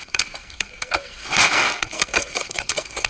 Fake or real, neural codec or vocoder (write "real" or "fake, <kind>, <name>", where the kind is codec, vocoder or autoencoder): fake, codec, SNAC